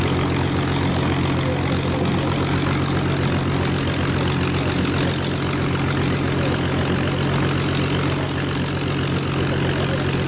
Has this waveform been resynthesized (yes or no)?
no